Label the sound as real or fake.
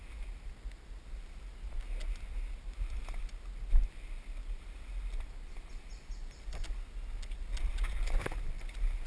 real